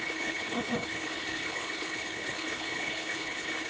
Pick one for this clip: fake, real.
fake